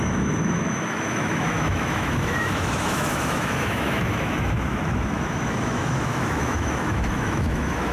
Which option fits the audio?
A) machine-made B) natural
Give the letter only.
A